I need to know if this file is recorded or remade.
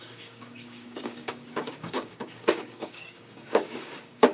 remade